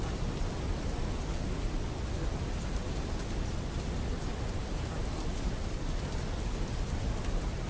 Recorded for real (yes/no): yes